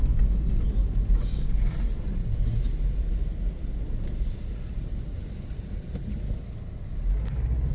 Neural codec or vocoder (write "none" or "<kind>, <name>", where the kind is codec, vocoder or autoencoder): none